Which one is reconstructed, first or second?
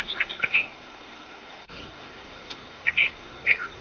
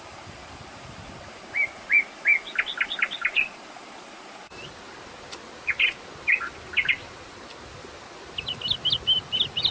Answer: first